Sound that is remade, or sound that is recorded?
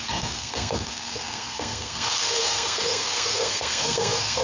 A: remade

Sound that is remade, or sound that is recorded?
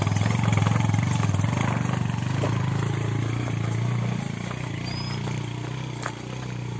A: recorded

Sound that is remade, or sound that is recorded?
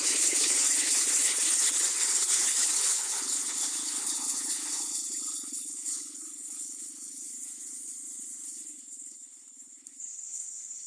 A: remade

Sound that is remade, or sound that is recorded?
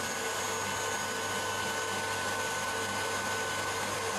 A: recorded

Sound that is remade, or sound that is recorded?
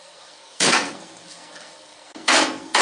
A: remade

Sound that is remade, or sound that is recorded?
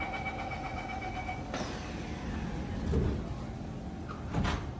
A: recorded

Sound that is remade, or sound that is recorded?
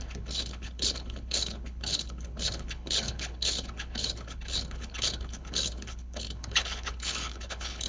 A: remade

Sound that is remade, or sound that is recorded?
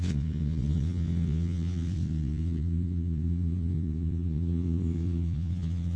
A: remade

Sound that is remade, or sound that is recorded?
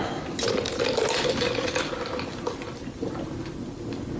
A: recorded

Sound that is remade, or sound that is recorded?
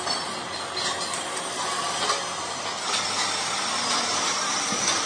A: recorded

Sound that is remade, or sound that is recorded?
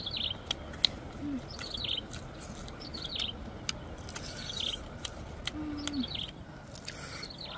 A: recorded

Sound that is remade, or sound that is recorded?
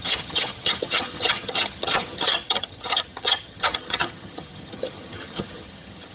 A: remade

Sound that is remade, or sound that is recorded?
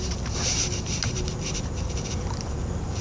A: remade